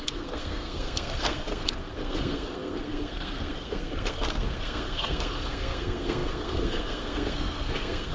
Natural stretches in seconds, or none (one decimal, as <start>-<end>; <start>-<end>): none